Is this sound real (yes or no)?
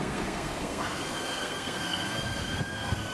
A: no